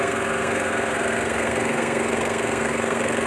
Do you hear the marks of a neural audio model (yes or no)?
yes